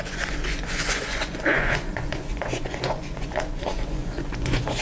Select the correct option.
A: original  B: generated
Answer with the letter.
B